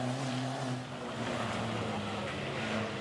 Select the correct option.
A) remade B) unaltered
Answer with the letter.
B